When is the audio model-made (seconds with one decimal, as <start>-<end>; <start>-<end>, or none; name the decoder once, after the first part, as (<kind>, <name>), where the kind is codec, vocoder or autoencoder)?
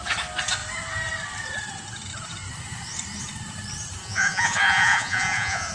4.0-5.7 (vocoder, Vocos)